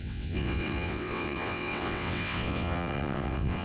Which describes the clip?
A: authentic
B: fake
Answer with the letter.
B